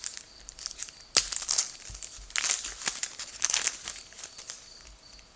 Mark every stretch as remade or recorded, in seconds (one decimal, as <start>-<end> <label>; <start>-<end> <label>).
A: 0.0-5.4 recorded